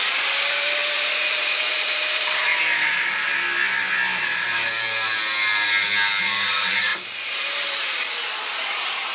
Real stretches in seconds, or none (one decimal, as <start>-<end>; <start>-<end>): 2.5-6.2